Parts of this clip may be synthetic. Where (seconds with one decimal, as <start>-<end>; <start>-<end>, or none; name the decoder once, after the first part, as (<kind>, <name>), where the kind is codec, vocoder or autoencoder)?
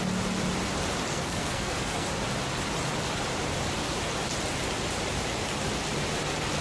1.1-2.1 (codec, SNAC)